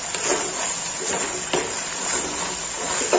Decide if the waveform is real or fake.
real